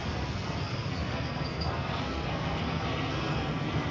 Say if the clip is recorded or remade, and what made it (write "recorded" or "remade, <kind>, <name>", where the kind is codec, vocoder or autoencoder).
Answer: remade, codec, SNAC